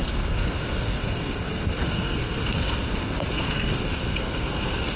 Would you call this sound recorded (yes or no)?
no